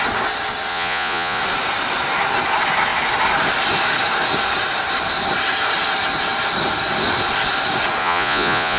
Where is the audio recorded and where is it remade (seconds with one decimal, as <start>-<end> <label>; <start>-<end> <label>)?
0.0-0.7 recorded; 0.7-1.4 remade; 1.4-8.0 recorded; 8.0-8.8 remade